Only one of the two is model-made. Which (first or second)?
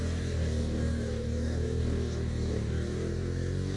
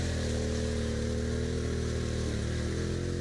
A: first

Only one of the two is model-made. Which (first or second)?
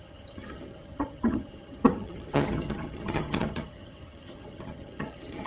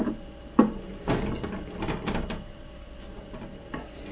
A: first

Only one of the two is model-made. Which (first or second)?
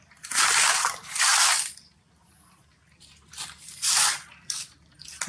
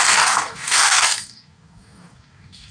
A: second